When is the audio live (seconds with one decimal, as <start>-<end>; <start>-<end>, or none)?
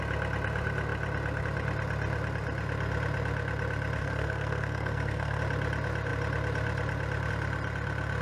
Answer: 0.0-4.0; 5.4-8.2